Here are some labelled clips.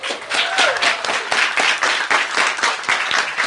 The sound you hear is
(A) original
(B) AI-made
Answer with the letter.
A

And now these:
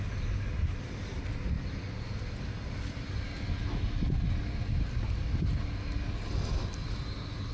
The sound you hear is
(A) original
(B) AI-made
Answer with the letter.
A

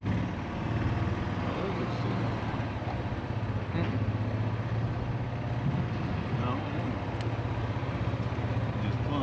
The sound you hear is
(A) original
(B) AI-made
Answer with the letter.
A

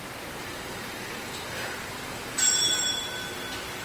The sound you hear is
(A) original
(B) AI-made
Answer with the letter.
B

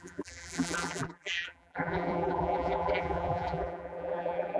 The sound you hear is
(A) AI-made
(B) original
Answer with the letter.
A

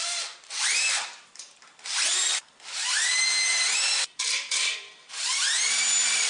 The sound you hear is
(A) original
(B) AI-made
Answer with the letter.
B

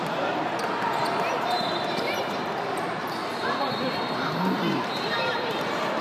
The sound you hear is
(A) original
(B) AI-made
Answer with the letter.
B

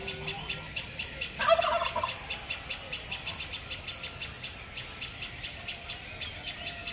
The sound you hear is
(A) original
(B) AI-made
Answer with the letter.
A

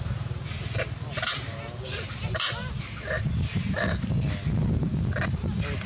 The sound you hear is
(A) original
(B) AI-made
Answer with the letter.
A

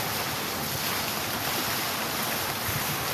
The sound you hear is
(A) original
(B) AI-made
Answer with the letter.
B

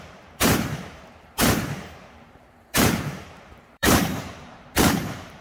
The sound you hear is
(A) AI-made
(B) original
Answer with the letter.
A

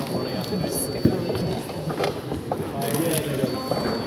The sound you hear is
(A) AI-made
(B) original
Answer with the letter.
B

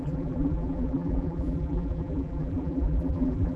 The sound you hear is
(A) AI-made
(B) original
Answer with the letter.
A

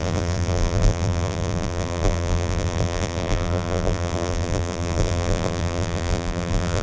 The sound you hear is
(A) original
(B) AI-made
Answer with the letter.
B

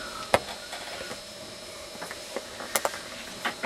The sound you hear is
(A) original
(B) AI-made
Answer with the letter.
A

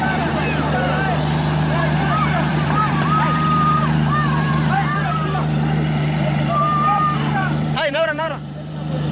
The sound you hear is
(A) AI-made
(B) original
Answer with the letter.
A